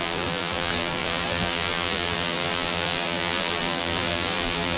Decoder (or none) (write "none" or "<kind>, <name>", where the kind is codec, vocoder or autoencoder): vocoder, BigVGAN v2